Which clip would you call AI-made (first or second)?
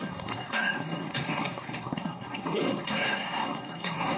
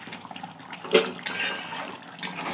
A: first